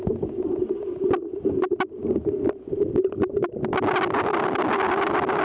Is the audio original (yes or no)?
yes